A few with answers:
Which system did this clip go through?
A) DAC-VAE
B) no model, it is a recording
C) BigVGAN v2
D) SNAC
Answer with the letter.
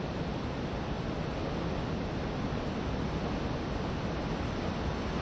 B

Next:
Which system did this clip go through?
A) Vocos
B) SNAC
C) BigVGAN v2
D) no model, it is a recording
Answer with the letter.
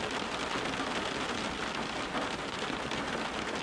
D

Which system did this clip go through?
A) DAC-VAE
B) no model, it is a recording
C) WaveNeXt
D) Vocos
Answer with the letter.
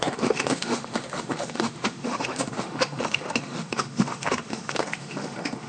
A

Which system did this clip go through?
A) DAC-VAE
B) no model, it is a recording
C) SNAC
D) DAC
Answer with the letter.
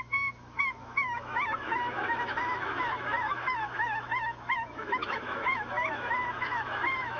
A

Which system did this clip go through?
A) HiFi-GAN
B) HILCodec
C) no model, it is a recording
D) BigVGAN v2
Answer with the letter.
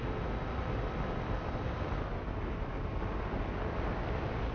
C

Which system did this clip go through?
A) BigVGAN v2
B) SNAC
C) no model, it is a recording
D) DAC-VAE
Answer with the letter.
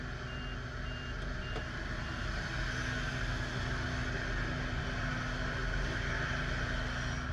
C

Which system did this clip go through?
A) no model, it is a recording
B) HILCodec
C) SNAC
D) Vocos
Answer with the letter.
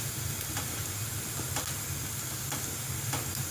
A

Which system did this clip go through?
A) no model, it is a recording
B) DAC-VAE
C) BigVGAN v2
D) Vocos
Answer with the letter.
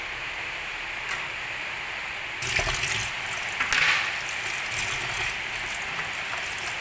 A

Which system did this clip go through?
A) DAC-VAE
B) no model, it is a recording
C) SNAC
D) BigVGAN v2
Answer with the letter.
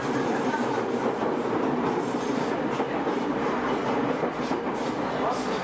B